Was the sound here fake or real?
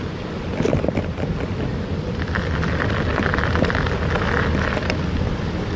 real